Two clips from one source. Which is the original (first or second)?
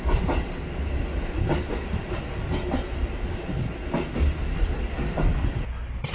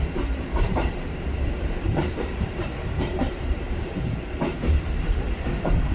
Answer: first